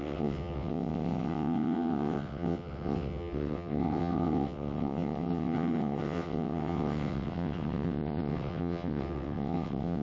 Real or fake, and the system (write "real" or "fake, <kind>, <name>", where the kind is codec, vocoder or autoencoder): fake, vocoder, WaveNeXt